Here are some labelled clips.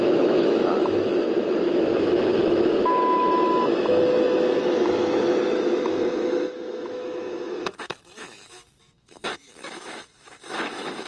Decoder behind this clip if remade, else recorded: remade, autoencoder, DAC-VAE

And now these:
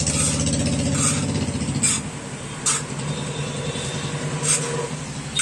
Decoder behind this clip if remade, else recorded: recorded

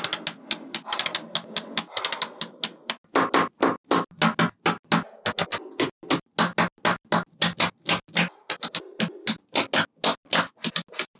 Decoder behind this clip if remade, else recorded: recorded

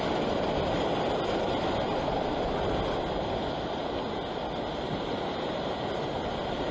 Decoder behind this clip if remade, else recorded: recorded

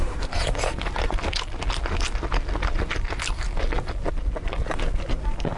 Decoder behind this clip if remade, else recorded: recorded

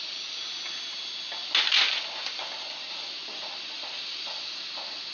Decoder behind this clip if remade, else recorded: recorded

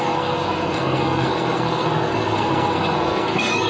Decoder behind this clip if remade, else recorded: remade, codec, SNAC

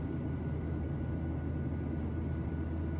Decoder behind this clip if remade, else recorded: recorded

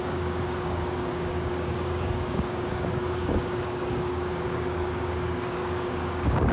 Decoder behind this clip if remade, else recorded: remade, codec, DAC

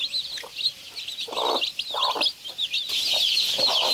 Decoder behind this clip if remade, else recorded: recorded